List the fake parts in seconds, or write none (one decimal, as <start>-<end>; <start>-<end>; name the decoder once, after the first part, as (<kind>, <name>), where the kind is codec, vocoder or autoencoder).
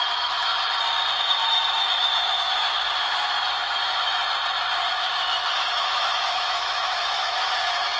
0.0-0.5 (autoencoder, DAC-VAE); 1.2-4.2; 4.9-8.0